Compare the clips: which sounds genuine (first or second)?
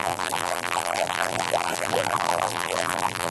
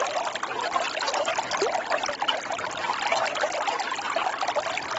second